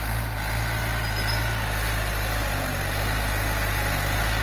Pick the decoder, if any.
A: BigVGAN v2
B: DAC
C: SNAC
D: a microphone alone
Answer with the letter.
D